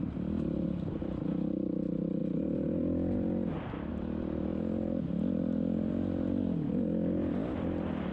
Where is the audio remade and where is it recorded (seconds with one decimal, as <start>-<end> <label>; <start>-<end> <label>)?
0.0-8.1 recorded